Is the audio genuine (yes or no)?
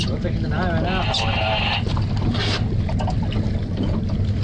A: yes